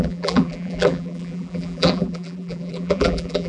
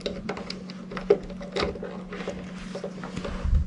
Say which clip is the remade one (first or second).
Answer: first